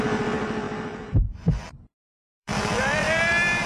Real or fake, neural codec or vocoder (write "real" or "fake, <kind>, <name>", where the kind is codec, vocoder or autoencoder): fake, vocoder, BigVGAN v2